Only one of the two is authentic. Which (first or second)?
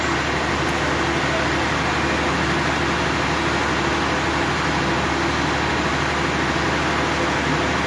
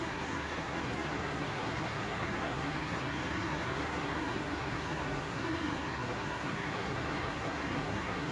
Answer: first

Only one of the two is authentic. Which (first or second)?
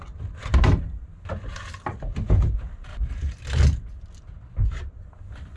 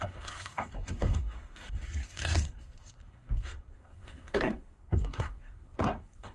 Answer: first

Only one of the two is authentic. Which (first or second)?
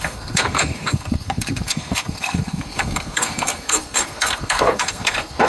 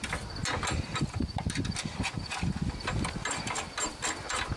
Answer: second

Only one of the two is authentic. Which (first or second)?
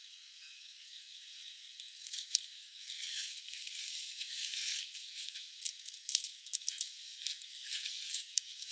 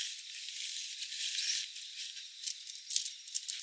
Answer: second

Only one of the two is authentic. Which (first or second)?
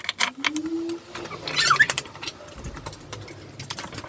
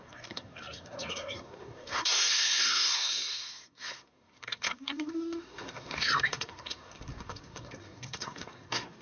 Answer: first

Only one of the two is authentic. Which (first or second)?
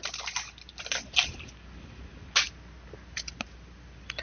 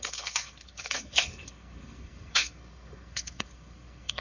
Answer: first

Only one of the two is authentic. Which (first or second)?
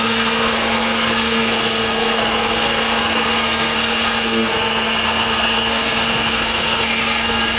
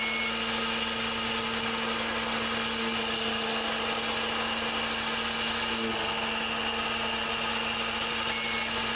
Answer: second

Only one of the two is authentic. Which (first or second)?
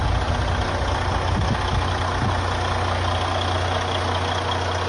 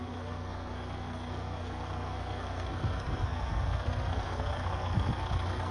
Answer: first